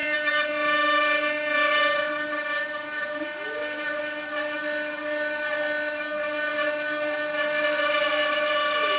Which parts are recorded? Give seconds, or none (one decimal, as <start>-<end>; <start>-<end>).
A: 0.5-9.0